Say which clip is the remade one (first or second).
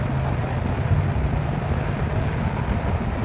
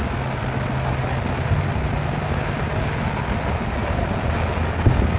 first